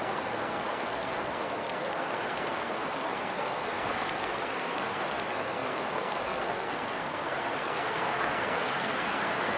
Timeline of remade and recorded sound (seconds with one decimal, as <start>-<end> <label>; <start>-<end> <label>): 0.0-9.6 remade